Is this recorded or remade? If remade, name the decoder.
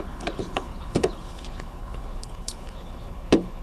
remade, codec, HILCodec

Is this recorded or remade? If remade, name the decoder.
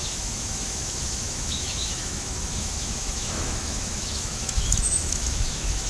remade, autoencoder, DAC-VAE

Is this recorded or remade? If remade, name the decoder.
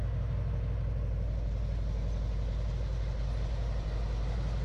recorded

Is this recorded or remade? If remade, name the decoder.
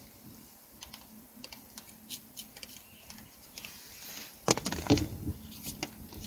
recorded